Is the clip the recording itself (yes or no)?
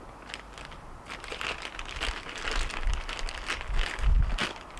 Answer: yes